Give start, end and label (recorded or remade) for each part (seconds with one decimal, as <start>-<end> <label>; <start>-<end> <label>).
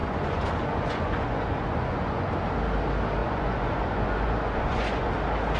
0.0-2.3 remade; 2.3-3.2 recorded; 3.2-5.1 remade; 5.1-5.6 recorded